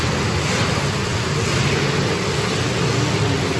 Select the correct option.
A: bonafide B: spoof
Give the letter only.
A